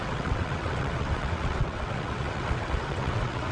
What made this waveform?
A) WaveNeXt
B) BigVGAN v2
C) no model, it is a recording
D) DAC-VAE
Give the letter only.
A